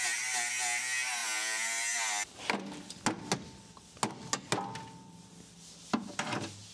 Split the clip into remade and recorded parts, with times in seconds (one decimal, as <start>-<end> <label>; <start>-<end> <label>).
0.0-6.7 recorded